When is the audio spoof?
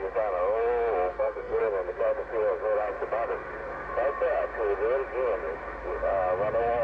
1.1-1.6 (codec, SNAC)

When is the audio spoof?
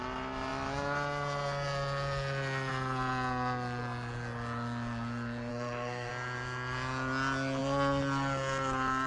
5.5-6.1 (codec, SNAC)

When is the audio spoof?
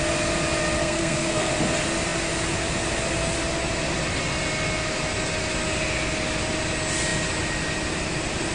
0.8-1.5 (codec, SNAC)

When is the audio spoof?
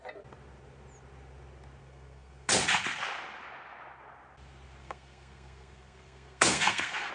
1.8-2.5 (codec, SNAC); 4.8-7.1